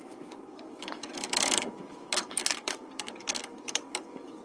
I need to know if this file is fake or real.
fake